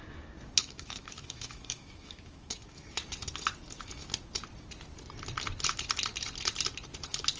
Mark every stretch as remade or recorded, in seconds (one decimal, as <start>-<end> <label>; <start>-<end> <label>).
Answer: 0.0-0.6 recorded; 0.6-3.0 remade; 3.0-7.4 recorded